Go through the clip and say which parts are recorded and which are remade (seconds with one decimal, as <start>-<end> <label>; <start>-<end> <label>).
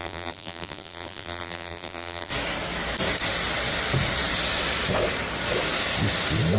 0.0-2.3 remade; 2.3-6.6 recorded